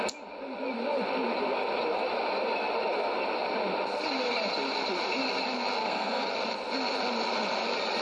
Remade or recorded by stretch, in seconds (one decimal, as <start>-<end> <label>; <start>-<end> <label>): 0.0-5.8 recorded; 5.8-6.3 remade; 6.3-8.0 recorded